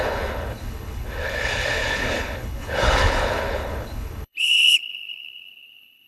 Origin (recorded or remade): remade